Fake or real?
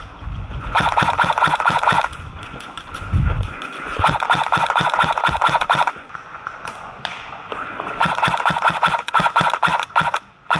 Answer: fake